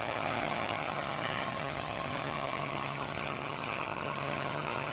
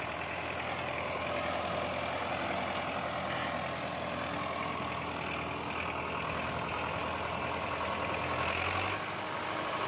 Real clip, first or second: second